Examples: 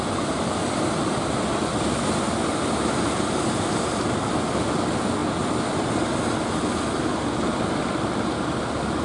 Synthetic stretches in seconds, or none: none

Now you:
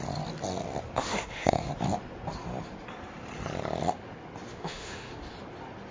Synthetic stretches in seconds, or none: 1.0-1.7; 4.5-5.2

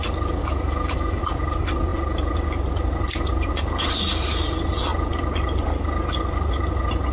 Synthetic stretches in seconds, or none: 0.4-1.2

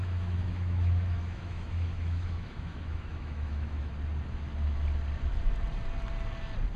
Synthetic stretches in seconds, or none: 0.0-3.9